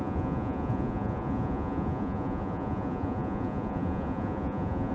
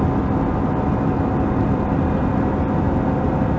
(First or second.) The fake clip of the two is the first